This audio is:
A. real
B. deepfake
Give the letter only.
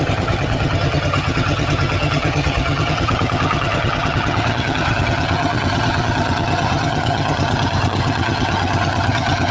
B